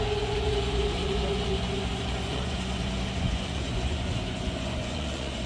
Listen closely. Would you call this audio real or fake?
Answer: fake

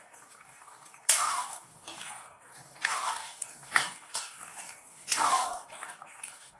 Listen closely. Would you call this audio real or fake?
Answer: fake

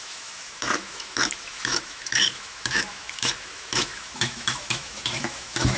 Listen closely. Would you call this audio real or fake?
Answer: fake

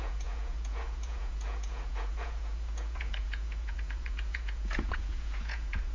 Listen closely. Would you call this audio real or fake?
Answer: fake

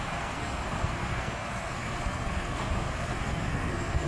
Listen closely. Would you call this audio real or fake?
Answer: fake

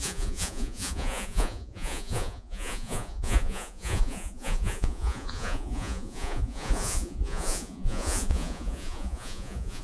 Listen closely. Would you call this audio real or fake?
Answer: fake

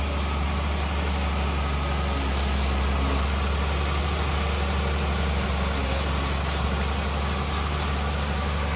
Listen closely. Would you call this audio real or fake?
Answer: real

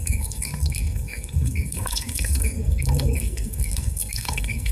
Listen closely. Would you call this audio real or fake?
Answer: fake